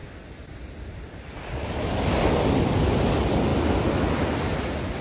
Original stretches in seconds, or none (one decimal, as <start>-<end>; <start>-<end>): 0.0-5.0